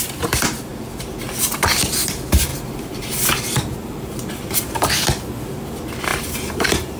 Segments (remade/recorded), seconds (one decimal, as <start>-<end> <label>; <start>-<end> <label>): 0.0-2.5 recorded; 2.5-4.9 remade; 4.9-6.1 recorded; 6.1-7.0 remade